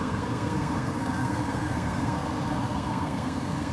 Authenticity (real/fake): fake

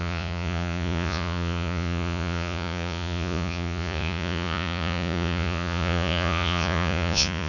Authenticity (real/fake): fake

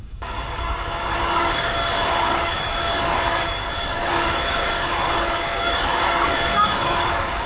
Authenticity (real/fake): fake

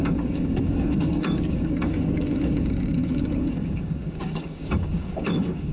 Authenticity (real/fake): fake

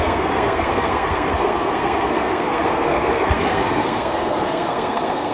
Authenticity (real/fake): fake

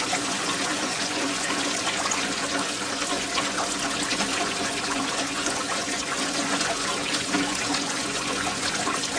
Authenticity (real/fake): fake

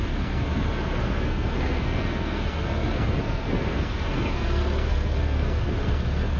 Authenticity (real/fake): fake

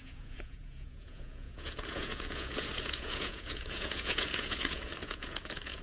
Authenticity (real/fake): fake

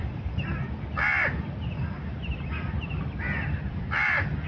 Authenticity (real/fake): fake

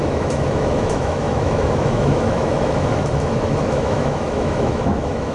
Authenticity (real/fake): fake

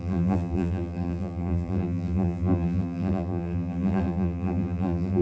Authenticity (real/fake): fake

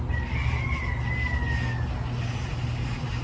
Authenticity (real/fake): real